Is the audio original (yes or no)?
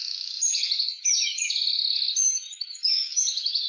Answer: no